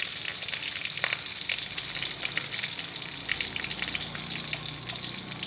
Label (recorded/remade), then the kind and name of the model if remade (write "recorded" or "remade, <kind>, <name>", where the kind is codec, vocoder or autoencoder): recorded